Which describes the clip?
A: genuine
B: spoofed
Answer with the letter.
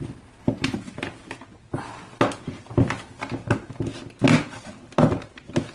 A